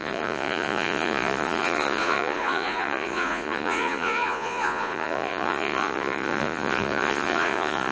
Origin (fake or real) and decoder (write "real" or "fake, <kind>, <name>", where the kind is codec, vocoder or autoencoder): fake, vocoder, Vocos